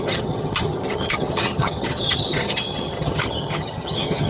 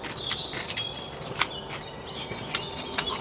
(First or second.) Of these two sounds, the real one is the second